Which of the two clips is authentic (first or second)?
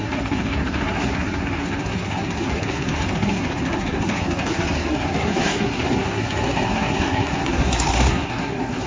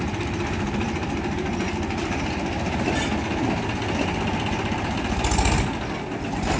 second